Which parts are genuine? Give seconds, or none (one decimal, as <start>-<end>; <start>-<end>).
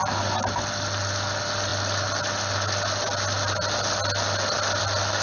0.0-5.2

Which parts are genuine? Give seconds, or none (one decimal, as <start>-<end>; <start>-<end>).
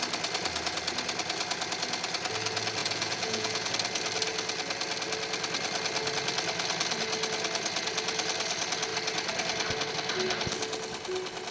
0.0-2.8; 3.7-11.5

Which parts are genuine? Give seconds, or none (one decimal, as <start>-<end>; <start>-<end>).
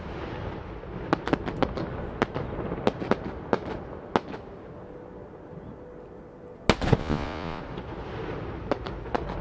0.0-7.0; 7.6-9.4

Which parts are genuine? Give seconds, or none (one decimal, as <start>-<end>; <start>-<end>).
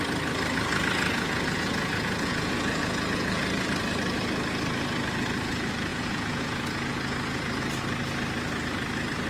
0.0-1.1; 3.5-5.9; 7.6-9.3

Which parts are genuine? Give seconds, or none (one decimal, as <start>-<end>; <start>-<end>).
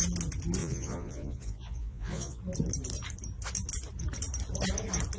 0.0-0.6; 2.4-5.2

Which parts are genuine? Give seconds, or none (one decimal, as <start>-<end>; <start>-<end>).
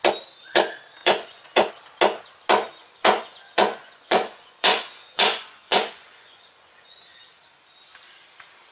0.0-1.0; 1.7-2.8; 7.0-8.7